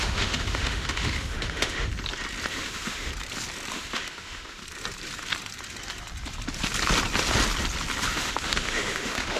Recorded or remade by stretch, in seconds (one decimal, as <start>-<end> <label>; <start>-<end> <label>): 0.0-1.9 remade; 1.9-2.5 recorded; 2.5-3.1 remade; 3.1-3.7 recorded; 3.7-4.6 remade; 4.6-8.1 recorded; 8.1-9.4 remade